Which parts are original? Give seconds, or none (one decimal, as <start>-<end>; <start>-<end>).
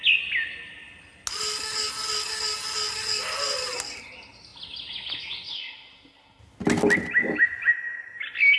0.0-8.6